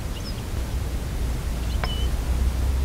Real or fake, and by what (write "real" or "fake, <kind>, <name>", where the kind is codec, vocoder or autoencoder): real